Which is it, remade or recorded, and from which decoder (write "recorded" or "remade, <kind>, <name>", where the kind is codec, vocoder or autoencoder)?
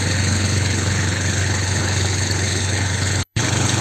remade, codec, HILCodec